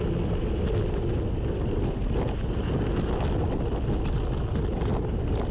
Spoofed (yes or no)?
no